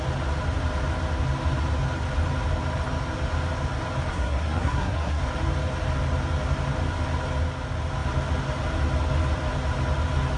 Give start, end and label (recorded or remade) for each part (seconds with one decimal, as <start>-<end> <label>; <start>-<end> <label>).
0.0-4.1 recorded; 4.1-5.2 remade; 5.2-10.4 recorded